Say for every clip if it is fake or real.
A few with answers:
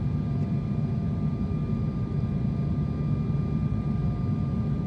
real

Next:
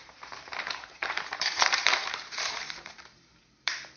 fake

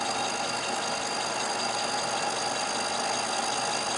real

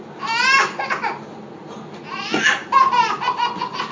real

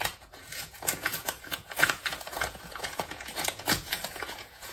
fake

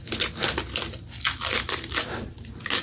real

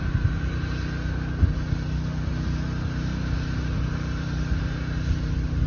real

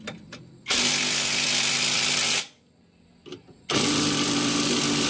real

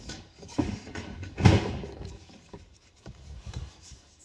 fake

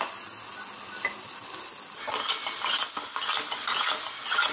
real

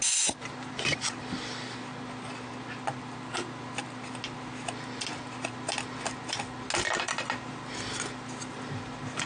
real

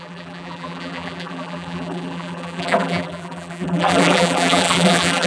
fake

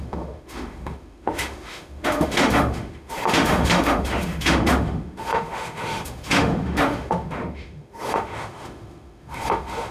fake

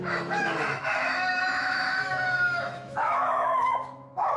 fake